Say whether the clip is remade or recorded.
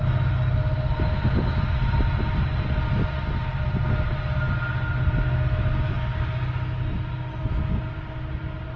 recorded